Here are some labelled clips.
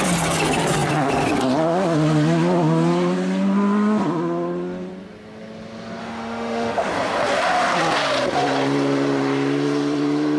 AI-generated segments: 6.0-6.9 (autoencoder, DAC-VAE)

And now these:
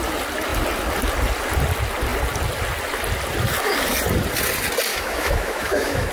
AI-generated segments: 4.9-6.1 (autoencoder, DAC-VAE)